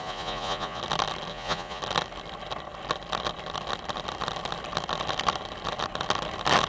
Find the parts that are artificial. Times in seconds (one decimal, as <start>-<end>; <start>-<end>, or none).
0.0-0.8; 1.3-1.8